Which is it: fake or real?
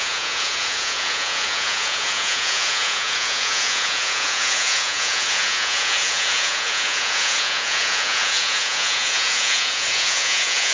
fake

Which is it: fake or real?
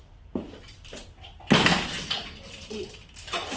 real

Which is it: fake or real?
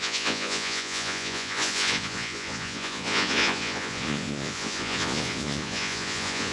fake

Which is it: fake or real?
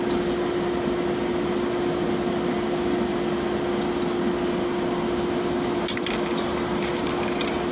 real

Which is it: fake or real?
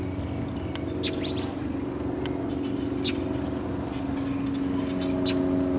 real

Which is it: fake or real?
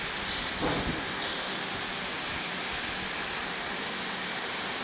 fake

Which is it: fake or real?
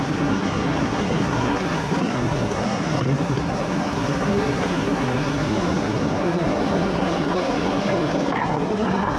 fake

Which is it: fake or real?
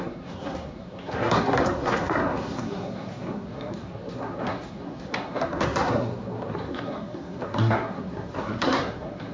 fake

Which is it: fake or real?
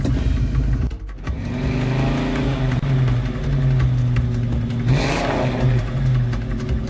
real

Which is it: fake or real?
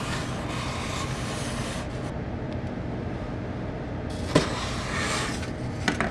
real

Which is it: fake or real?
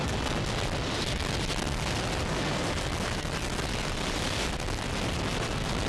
real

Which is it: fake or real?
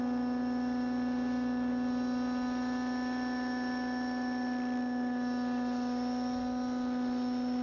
real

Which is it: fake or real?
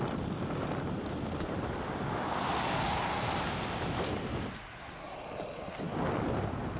real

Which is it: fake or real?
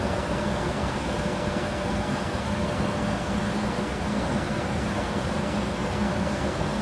fake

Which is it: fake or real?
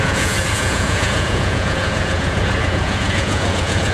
fake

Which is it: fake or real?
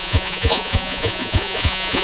fake